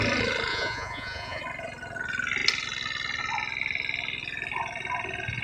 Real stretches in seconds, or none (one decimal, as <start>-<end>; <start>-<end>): 0.0-0.5; 1.4-5.4

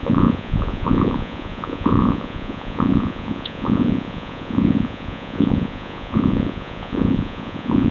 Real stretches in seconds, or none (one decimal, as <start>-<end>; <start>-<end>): none

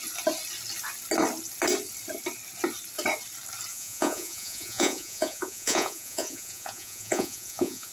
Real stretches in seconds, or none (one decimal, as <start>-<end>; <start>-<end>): 0.0-3.7

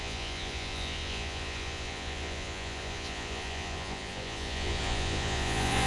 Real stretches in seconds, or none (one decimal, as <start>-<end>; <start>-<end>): none

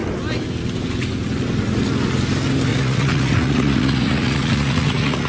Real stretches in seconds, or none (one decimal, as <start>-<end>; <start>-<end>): 0.0-2.7

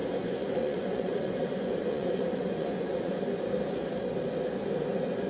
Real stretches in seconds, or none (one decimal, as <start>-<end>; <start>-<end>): 3.2-5.3

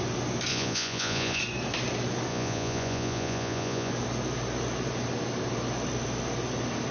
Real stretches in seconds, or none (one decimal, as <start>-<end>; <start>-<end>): 0.0-0.5; 1.4-2.3; 3.9-6.9

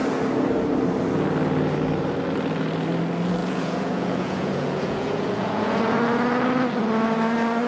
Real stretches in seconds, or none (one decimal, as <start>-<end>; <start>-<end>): 0.0-3.4; 5.8-7.7